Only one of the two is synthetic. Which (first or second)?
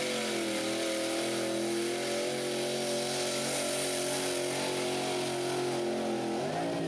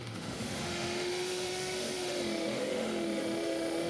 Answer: second